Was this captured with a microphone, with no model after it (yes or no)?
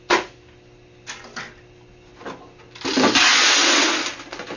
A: yes